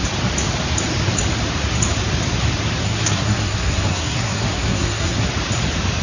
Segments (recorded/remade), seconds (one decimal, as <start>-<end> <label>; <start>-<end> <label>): 0.0-2.8 recorded; 2.8-5.3 remade; 5.3-6.0 recorded